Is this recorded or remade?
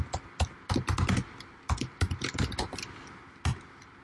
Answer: recorded